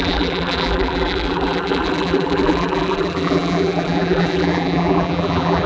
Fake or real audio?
fake